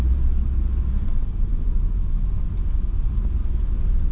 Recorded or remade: recorded